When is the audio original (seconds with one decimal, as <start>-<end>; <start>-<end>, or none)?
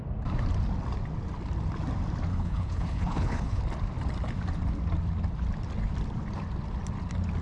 0.0-2.3; 3.6-7.4